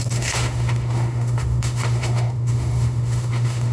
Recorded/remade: remade